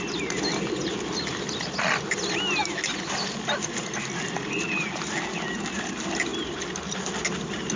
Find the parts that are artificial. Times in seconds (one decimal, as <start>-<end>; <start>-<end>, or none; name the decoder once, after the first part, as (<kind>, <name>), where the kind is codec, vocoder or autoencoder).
none